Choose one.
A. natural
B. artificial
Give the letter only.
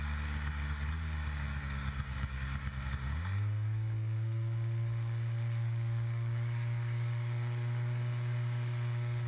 B